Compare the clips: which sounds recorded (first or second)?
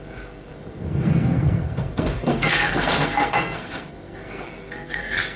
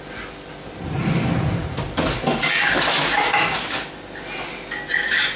second